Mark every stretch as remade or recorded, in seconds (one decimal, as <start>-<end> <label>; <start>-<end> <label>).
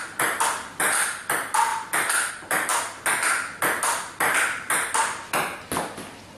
0.0-6.4 recorded